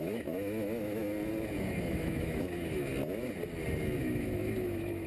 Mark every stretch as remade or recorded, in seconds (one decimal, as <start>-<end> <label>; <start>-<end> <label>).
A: 0.0-1.0 remade; 1.0-1.7 recorded; 1.7-2.9 remade; 2.9-4.0 recorded; 4.0-5.1 remade